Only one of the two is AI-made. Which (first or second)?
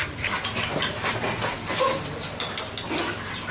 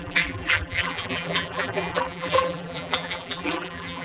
second